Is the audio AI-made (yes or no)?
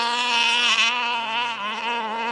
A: no